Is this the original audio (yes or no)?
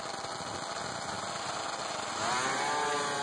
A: yes